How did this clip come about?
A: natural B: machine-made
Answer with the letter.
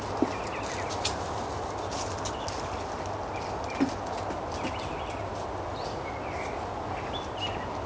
A